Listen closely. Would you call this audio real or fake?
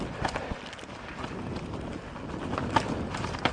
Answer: real